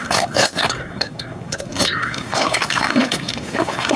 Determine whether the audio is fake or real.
fake